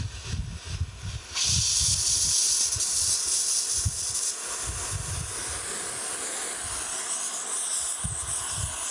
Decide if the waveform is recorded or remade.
recorded